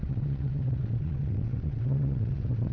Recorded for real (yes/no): no